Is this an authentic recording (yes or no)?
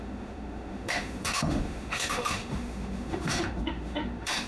no